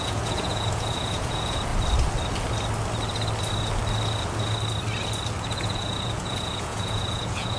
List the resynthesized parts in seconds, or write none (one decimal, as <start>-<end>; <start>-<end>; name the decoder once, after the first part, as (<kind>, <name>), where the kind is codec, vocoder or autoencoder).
0.0-1.7 (vocoder, Vocos); 5.4-7.6